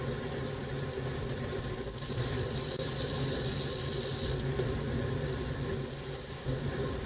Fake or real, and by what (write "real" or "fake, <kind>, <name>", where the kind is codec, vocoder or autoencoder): real